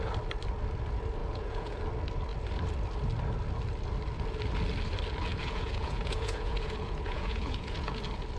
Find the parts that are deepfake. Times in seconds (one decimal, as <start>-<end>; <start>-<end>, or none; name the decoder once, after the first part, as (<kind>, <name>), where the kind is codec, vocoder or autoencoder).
1.2-1.8 (vocoder, Vocos); 5.3-8.0